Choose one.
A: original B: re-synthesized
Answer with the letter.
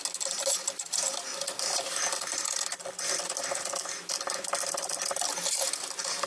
A